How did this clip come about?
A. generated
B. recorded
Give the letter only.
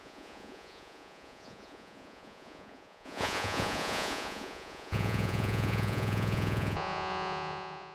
A